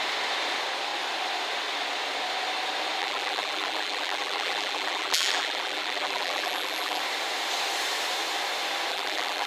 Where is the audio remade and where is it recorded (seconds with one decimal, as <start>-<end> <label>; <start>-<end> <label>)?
0.0-3.0 recorded; 3.0-7.0 remade; 7.0-8.9 recorded; 8.9-9.5 remade